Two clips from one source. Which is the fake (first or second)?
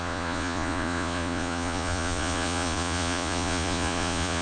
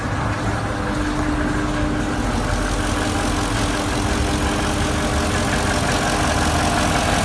first